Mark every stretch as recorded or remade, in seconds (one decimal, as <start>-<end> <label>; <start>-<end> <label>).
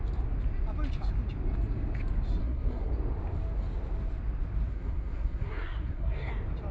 0.0-2.4 recorded; 2.4-2.9 remade; 2.9-4.7 recorded; 4.7-6.3 remade; 6.3-6.7 recorded